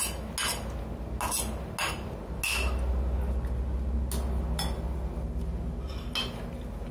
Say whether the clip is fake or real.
real